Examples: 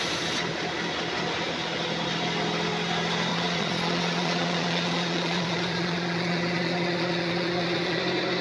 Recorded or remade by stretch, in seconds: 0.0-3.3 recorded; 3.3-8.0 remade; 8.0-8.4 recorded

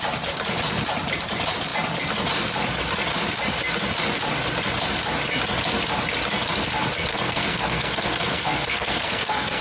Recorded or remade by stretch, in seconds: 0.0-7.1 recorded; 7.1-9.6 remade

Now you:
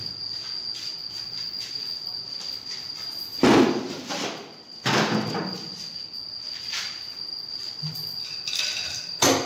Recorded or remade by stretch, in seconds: 0.0-9.5 remade

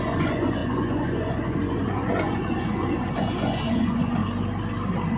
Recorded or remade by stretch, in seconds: 0.0-4.2 remade; 4.2-5.2 recorded

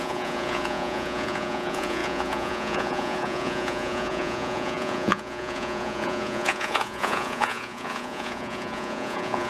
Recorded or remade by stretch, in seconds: 0.0-9.5 remade

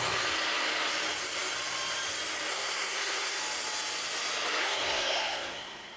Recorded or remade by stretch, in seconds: 0.0-2.5 recorded; 2.5-3.4 remade; 3.4-4.6 recorded; 4.6-6.0 remade